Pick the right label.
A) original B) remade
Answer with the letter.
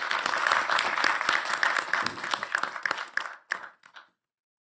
A